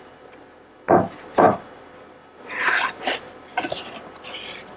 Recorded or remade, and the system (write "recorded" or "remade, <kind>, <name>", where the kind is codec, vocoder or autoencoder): recorded